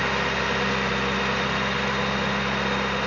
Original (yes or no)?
yes